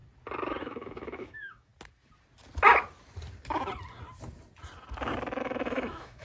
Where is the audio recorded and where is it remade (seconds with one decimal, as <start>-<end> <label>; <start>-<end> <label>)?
0.0-0.6 recorded; 0.6-1.7 remade; 1.7-5.4 recorded; 5.4-6.2 remade